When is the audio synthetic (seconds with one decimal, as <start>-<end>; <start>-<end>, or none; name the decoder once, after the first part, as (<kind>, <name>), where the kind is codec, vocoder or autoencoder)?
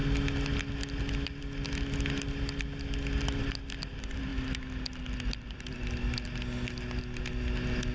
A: none